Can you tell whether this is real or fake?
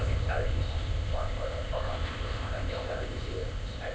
fake